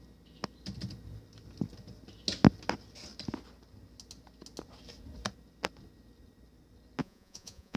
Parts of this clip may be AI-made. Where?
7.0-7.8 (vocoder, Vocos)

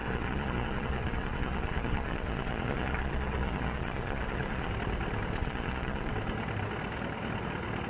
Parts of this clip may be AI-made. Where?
0.0-4.7 (vocoder, Vocos); 5.4-6.1